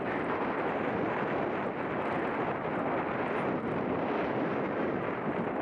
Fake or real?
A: real